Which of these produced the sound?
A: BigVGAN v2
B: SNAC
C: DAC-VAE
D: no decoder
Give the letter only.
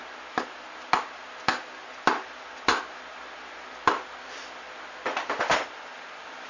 D